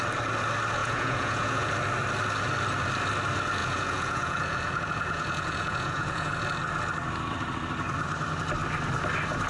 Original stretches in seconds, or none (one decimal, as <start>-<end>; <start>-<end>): 0.0-0.8; 1.7-3.6; 6.3-9.5